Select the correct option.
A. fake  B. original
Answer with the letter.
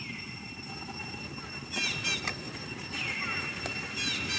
B